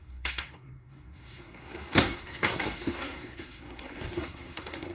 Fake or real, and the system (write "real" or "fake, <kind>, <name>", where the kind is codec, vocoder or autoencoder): fake, codec, SNAC